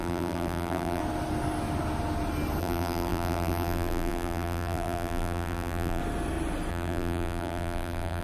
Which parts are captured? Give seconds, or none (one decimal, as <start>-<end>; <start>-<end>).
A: 1.0-2.6; 6.0-6.7